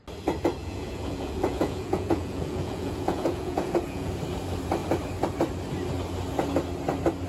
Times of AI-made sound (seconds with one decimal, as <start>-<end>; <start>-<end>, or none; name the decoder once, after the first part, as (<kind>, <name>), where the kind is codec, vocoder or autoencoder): 0.6-4.1 (vocoder, Vocos)